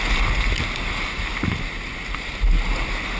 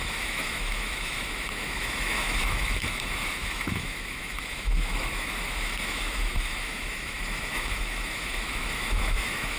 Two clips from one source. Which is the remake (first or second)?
second